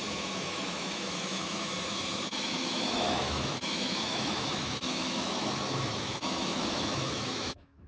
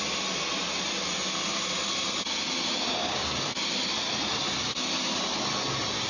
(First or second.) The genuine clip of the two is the second